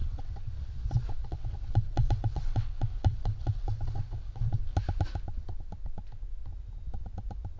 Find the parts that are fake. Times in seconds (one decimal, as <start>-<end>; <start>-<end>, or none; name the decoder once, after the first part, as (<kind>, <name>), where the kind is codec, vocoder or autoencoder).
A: 0.0-0.5 (vocoder, WaveNeXt); 1.2-4.4